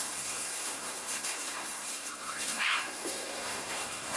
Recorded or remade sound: remade